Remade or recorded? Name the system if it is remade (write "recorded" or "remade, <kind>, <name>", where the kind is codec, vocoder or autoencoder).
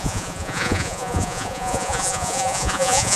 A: remade, vocoder, Vocos